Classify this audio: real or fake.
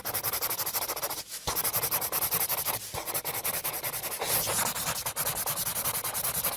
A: real